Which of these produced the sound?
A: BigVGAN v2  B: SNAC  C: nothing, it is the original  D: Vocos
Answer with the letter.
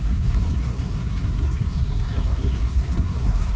B